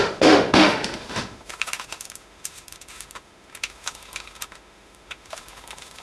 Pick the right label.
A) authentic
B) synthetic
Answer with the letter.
B